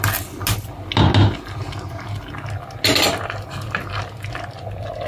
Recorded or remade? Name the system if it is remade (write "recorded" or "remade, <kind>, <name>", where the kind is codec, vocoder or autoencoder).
recorded